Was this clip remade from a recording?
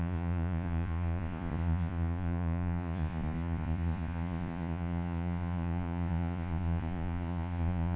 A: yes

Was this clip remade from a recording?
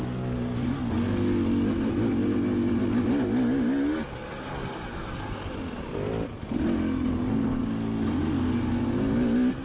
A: no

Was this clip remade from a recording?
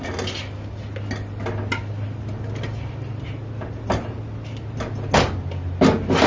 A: no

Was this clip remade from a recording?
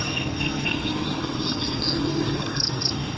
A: yes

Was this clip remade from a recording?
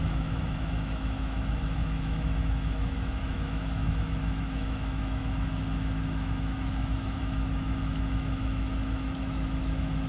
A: yes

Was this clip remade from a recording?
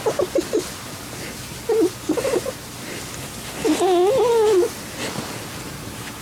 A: no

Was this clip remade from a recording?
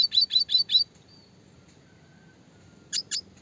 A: no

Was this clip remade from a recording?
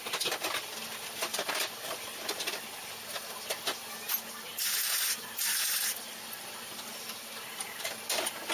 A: no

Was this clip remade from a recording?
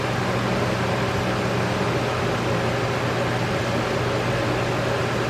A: no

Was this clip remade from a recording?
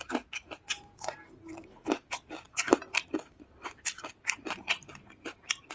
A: no